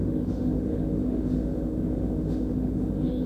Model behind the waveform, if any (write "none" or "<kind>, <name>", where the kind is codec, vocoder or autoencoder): autoencoder, DAC-VAE